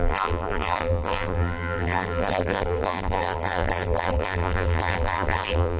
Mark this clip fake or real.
fake